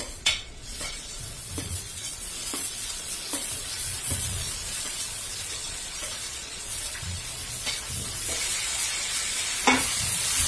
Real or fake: fake